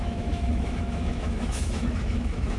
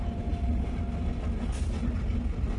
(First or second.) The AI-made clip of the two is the first